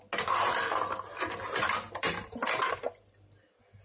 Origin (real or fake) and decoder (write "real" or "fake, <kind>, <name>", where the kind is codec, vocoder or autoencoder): real